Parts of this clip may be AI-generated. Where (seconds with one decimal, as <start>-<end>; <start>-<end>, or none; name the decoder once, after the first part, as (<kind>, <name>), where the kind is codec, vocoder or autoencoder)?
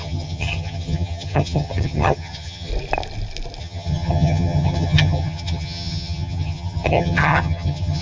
0.0-2.7 (vocoder, HiFi-GAN); 3.6-8.0